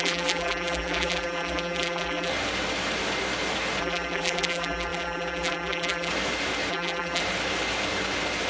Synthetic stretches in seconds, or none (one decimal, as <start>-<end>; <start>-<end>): 0.0-2.3; 3.8-6.1; 6.7-7.2